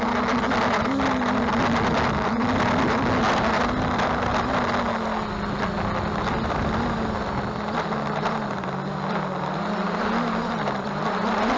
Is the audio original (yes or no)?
yes